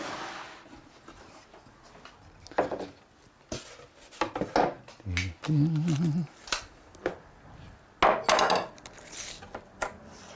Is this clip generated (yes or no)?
no